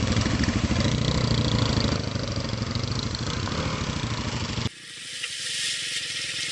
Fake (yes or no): no